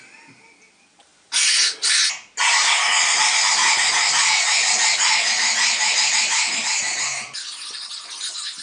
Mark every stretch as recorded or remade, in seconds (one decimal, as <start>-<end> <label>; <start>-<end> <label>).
0.0-8.6 recorded